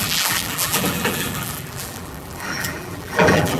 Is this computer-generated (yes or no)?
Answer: yes